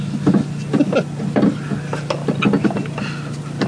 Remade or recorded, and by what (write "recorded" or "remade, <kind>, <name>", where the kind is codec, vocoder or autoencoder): recorded